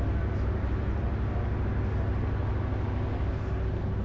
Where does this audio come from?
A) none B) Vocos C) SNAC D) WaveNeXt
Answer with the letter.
A